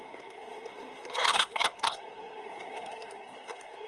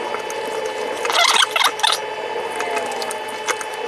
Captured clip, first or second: second